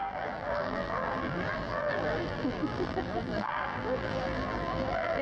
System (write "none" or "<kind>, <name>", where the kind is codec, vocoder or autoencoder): vocoder, BigVGAN v2